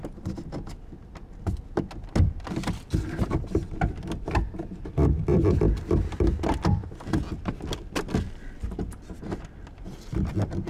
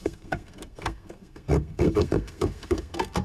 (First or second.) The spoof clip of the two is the second